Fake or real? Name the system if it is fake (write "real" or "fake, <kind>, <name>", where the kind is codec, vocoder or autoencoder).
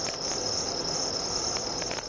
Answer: real